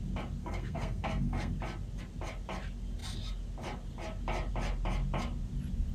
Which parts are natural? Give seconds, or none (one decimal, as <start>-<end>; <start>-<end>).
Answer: 0.0-0.4; 1.5-5.9

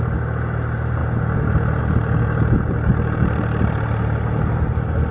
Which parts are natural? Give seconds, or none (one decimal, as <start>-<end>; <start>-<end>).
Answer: 0.0-5.1

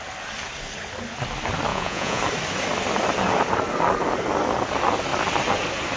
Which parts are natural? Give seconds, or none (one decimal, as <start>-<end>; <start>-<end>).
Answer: 0.0-1.7; 2.2-6.0

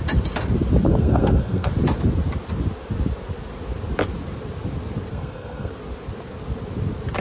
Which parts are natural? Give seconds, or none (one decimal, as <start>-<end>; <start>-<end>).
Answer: 0.0-0.9; 1.7-5.1; 5.7-7.2

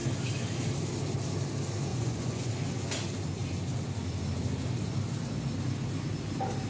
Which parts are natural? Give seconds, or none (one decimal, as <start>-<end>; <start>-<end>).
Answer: 0.0-1.9; 2.5-6.7

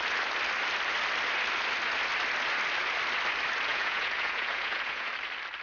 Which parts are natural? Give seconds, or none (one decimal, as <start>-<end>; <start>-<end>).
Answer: 0.0-3.7; 5.1-5.6